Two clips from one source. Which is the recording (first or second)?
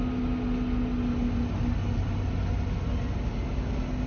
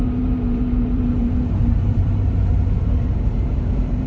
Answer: first